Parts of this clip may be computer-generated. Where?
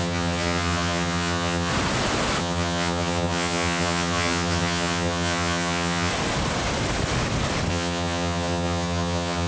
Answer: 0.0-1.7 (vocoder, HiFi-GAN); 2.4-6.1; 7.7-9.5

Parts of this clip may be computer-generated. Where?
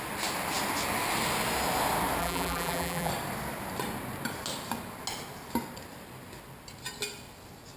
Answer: 2.2-3.1 (vocoder, BigVGAN v2)